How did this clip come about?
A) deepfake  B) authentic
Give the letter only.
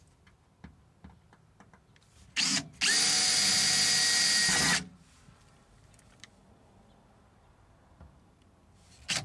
B